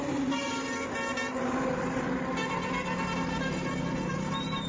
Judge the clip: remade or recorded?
recorded